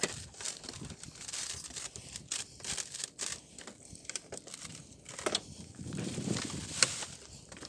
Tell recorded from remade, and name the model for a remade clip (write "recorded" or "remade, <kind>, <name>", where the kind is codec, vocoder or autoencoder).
remade, vocoder, BigVGAN v2